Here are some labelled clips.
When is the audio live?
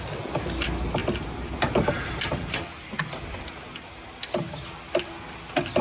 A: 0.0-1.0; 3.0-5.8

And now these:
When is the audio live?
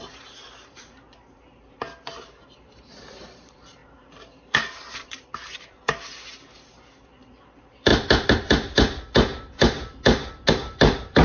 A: 7.9-10.5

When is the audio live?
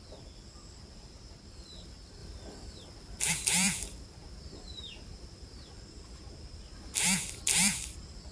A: none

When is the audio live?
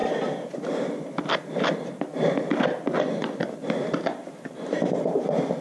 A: 0.0-4.2; 4.8-5.6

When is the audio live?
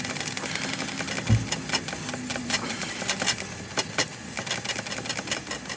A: 0.0-2.3; 3.0-5.8